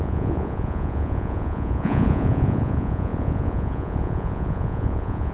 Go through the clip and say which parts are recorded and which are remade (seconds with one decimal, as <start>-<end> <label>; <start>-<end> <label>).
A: 0.0-5.3 remade